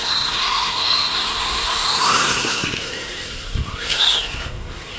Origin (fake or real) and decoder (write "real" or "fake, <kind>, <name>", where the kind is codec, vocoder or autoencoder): fake, codec, SNAC